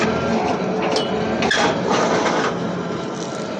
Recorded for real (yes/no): yes